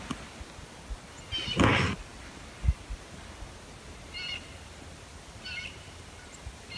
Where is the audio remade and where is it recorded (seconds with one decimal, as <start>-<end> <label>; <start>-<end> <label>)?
0.0-6.8 recorded